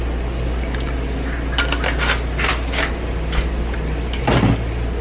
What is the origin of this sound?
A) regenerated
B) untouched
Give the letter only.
B